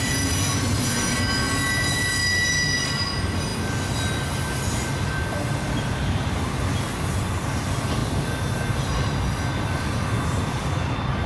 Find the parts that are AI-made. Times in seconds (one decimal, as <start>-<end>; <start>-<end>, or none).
none